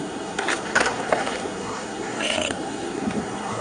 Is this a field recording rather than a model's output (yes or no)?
no